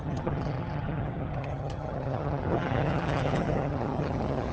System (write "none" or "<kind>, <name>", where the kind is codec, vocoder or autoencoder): vocoder, HiFi-GAN